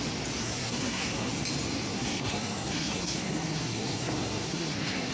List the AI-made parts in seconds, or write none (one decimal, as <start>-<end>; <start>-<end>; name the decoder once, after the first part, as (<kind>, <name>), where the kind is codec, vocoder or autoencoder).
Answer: 0.4-1.3 (codec, SNAC); 1.9-5.1